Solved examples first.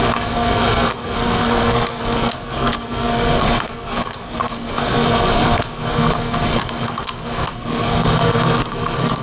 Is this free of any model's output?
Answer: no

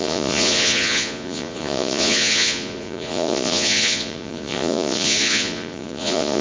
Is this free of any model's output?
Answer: no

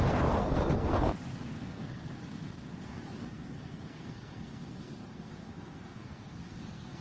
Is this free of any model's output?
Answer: no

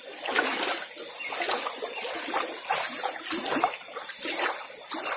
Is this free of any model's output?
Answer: yes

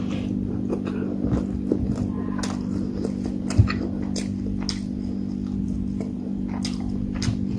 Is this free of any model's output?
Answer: yes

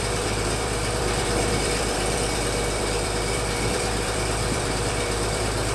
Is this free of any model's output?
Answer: no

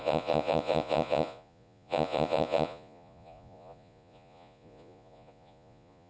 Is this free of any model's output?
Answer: no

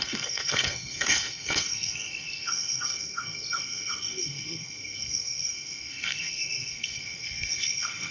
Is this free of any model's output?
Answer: no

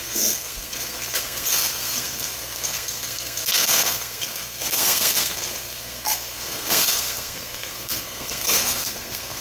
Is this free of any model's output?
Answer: no